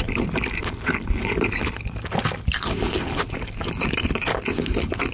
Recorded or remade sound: recorded